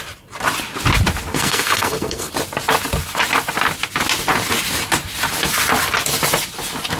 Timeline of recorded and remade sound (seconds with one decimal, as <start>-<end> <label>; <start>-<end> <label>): 0.0-1.3 recorded; 1.3-2.3 remade; 2.3-7.0 recorded

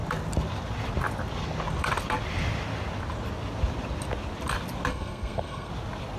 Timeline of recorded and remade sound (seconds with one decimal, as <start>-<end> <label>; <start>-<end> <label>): 0.0-4.9 recorded; 4.9-5.7 remade; 5.7-6.2 recorded